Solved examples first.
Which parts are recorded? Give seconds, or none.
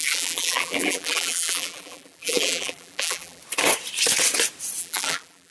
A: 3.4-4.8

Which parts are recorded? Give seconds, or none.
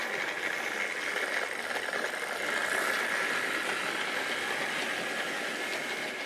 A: 0.0-6.3